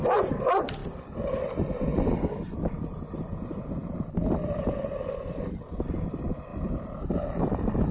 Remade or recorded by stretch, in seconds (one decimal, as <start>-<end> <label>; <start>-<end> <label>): 0.0-7.9 recorded